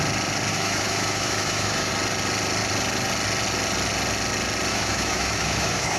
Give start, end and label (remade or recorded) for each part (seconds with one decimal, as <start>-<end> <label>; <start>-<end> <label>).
0.0-0.5 recorded; 0.5-1.9 remade; 1.9-4.7 recorded; 4.7-6.0 remade